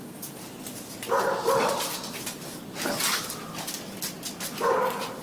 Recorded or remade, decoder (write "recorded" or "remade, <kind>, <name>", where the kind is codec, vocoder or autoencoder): recorded